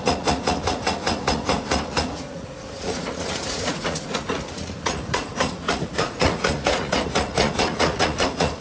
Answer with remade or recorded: remade